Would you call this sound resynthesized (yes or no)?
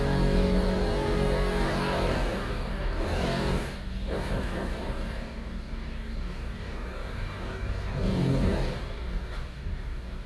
yes